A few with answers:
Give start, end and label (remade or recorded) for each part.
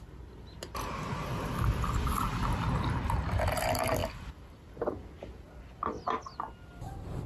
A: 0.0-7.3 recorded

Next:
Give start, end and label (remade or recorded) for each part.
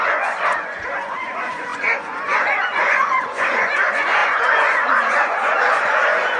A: 0.0-6.4 remade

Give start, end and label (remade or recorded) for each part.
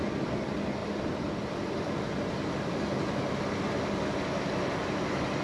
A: 0.0-5.4 recorded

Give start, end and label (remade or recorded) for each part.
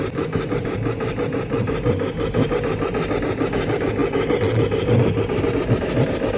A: 0.0-6.4 recorded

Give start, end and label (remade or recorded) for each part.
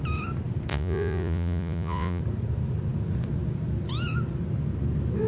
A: 0.0-0.7 recorded; 0.7-2.2 remade; 2.2-5.3 recorded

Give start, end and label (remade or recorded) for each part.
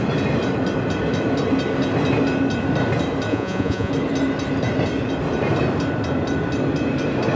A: 0.0-3.3 recorded; 3.3-3.9 remade; 3.9-7.4 recorded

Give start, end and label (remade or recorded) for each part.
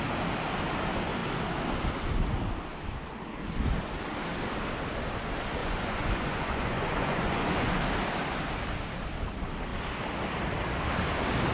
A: 0.0-5.6 recorded; 5.6-7.8 remade; 7.8-11.5 recorded